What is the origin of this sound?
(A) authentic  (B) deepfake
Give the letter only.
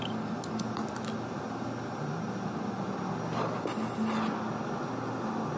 A